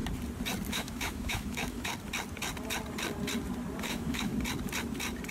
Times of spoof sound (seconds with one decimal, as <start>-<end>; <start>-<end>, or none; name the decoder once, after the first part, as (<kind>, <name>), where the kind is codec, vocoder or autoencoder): 0.7-1.9 (autoencoder, DAC-VAE); 3.8-4.3